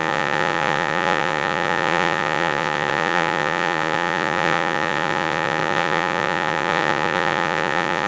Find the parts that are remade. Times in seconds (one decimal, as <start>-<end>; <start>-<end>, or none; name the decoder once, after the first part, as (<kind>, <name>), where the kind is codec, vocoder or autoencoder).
0.0-8.1 (vocoder, Vocos)